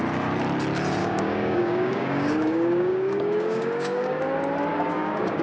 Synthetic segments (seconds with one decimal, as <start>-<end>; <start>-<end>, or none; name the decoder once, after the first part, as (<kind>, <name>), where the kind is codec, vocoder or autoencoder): 1.0-4.2 (codec, DAC); 4.7-5.4